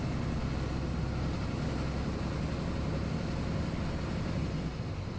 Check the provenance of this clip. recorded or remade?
recorded